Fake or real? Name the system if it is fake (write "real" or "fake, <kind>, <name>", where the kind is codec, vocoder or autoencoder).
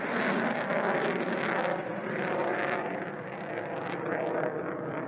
real